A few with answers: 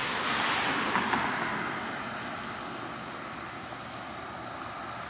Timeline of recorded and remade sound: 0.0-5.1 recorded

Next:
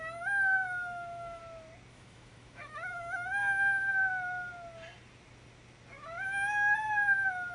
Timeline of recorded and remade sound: 0.0-1.4 remade; 1.4-1.9 recorded; 1.9-3.4 remade; 3.4-7.5 recorded

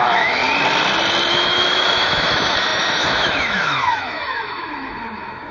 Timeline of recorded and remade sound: 0.0-0.4 remade; 0.4-1.3 recorded; 1.3-5.5 remade

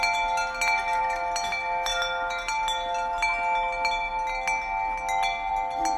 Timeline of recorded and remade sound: 0.0-6.0 recorded

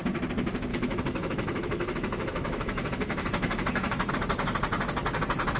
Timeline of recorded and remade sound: 0.0-0.7 recorded; 0.7-4.1 remade; 4.1-5.6 recorded

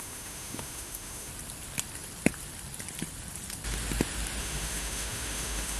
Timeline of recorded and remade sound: 0.0-1.3 remade; 1.3-4.4 recorded; 4.4-5.8 remade

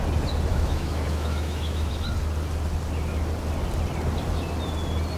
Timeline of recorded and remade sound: 0.0-0.5 recorded; 0.5-1.9 remade; 1.9-5.2 recorded

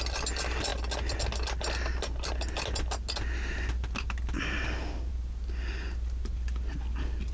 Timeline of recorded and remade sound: 0.0-7.3 recorded